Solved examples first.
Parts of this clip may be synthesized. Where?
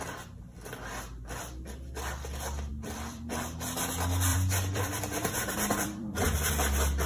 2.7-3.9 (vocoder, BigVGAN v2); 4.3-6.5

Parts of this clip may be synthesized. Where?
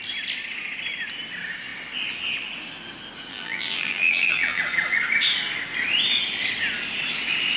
3.3-4.6 (vocoder, BigVGAN v2)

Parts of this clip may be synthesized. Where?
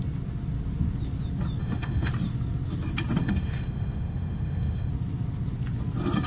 1.6-2.1 (autoencoder, DAC-VAE); 3.2-4.9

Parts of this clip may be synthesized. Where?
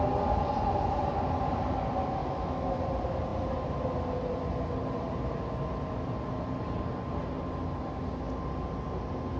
2.2-2.8 (autoencoder, DAC-VAE)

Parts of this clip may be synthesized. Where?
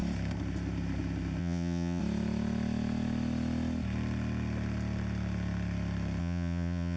1.4-2.0 (vocoder, Vocos); 6.2-7.0